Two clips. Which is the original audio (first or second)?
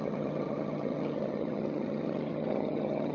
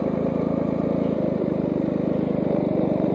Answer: second